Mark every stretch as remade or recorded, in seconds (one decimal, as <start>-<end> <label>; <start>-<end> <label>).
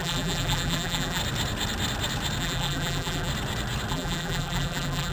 0.0-1.2 remade; 1.2-2.4 recorded; 2.4-3.3 remade; 3.3-3.9 recorded; 3.9-5.1 remade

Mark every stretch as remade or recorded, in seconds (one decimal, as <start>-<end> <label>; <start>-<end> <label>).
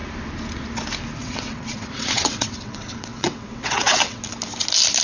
0.0-1.2 recorded; 1.2-4.2 remade; 4.2-5.0 recorded